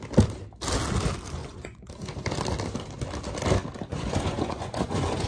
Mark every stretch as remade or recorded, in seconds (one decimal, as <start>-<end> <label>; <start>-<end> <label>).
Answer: 0.0-1.4 recorded; 1.4-1.9 remade; 1.9-3.9 recorded; 3.9-5.3 remade

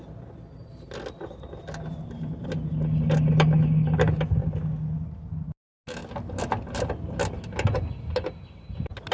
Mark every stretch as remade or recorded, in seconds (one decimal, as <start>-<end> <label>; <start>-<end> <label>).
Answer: 0.0-9.1 recorded

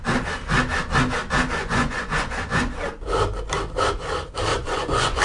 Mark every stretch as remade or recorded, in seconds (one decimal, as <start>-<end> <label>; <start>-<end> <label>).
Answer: 0.0-1.6 recorded; 1.6-2.7 remade; 2.7-4.5 recorded; 4.5-5.2 remade